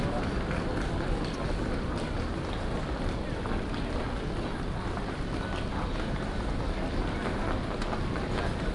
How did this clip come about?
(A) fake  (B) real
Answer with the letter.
B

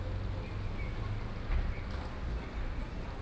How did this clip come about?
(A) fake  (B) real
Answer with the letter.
B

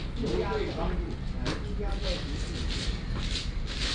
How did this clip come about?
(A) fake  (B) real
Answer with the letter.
B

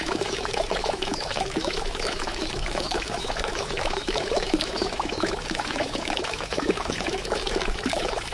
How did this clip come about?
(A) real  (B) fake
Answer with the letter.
B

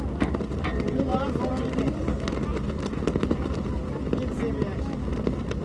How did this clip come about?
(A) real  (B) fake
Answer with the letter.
A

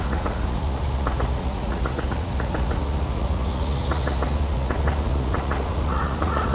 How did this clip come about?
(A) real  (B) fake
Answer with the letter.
B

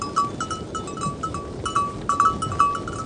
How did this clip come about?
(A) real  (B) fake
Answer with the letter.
A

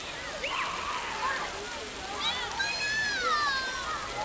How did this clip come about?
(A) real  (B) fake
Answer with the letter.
A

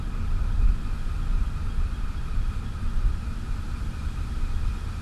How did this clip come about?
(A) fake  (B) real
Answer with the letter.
B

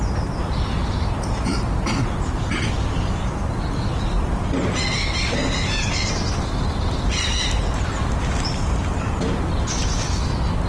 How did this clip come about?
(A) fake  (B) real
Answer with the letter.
B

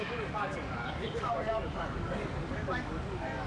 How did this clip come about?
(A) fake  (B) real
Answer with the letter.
A